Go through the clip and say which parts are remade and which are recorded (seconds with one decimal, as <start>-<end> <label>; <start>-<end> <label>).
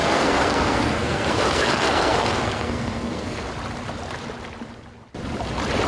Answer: 0.0-3.5 remade; 3.5-5.9 recorded